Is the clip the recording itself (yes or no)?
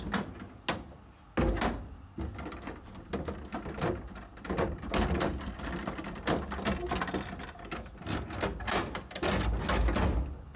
yes